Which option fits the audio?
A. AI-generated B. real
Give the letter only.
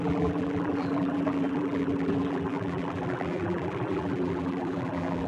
A